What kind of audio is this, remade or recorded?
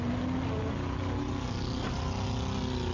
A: recorded